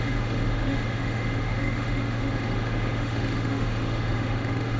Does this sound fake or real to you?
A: fake